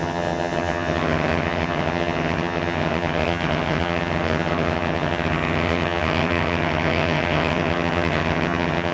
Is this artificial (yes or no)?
yes